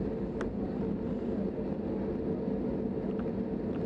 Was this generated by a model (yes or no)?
no